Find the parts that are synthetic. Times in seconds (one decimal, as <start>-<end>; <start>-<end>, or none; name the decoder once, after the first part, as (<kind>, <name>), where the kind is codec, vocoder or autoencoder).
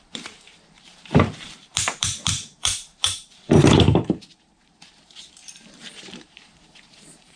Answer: 0.0-7.4 (vocoder, BigVGAN v2)